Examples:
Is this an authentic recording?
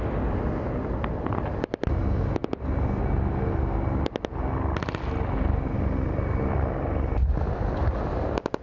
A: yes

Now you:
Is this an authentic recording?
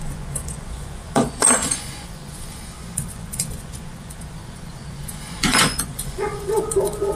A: no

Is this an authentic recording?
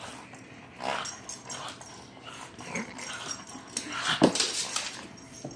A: yes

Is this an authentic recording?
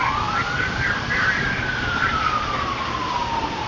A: yes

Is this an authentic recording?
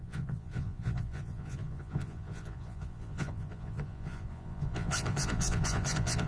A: no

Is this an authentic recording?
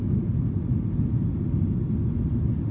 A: yes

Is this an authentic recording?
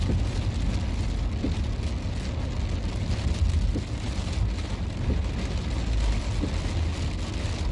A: yes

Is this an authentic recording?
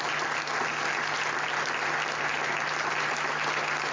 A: yes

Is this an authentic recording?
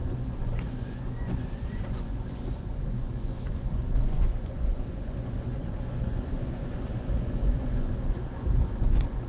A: no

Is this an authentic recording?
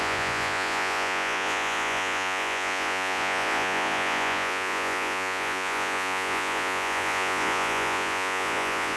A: no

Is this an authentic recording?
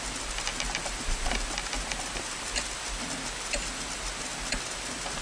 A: yes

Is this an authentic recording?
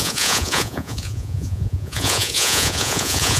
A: no